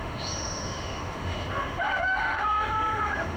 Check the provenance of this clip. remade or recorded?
remade